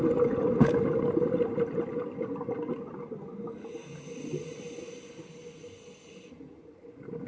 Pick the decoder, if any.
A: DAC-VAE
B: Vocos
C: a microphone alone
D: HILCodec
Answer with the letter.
C